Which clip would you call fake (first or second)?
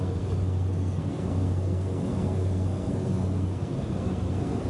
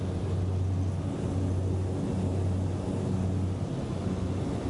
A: first